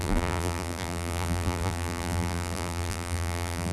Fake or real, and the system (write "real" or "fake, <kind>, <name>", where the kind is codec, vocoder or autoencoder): fake, vocoder, BigVGAN v2